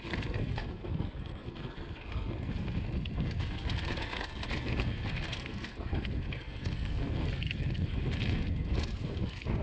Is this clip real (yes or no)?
no